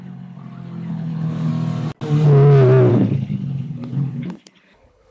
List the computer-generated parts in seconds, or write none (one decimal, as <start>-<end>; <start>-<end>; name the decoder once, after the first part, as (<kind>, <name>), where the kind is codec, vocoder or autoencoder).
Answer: 0.0-0.4 (codec, HILCodec); 0.9-1.5; 2.9-5.1